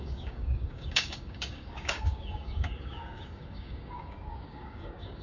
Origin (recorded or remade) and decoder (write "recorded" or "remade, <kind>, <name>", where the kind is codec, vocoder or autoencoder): remade, codec, DAC